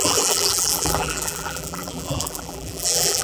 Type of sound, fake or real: fake